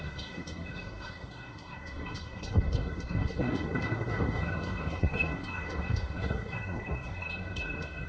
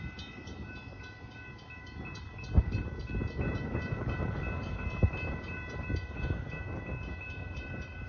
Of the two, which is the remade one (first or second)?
first